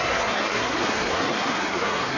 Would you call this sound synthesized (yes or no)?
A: yes